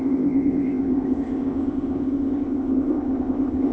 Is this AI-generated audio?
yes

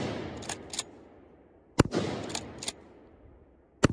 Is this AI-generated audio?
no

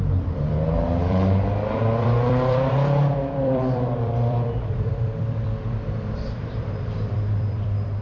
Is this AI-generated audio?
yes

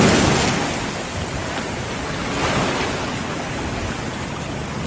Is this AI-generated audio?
no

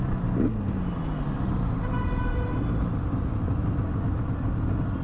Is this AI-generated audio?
no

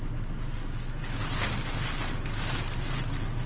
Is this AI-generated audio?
no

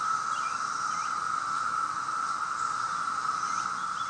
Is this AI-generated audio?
no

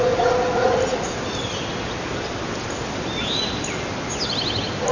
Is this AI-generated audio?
no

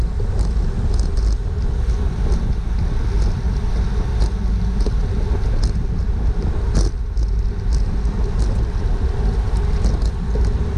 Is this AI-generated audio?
no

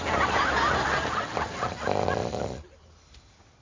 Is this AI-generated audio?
no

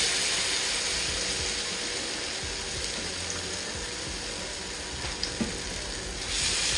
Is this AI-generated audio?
no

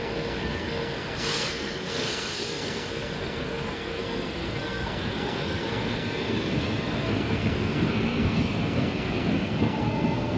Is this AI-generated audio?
yes